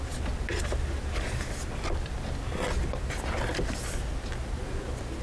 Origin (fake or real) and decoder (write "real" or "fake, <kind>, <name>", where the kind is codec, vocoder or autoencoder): real